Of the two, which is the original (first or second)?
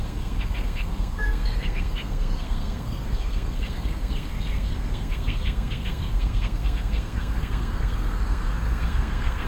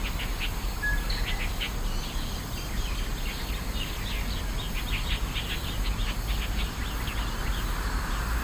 second